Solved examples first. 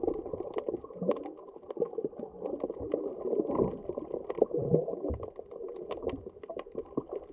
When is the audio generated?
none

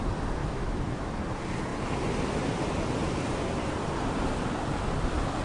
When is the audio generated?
0.4-1.2 (autoencoder, DAC-VAE)